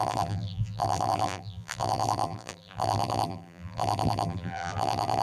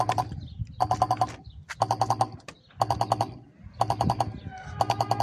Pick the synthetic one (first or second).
first